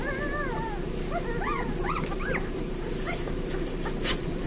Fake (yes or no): yes